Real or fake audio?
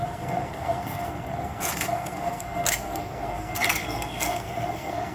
fake